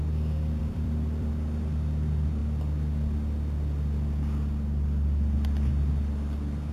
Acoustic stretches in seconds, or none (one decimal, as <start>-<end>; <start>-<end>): 0.0-0.6; 1.3-6.7

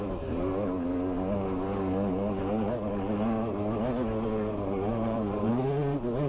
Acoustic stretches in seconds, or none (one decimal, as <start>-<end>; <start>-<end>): 0.0-4.9; 5.5-6.3

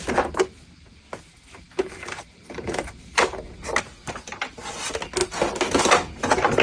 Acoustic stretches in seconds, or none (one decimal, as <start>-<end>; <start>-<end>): 0.0-1.3; 3.6-6.6

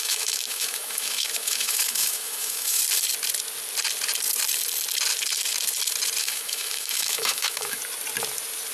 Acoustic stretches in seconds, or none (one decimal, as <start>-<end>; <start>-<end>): 2.8-6.2; 7.8-8.7

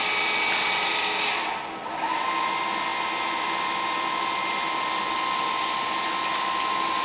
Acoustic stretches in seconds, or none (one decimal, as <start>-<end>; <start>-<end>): 0.0-7.0

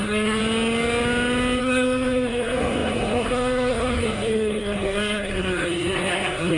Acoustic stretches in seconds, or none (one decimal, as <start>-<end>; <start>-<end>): 0.4-1.6

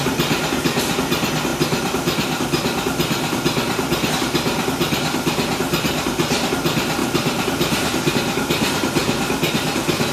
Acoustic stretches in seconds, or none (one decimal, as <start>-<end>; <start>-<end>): 0.0-7.0; 8.1-10.1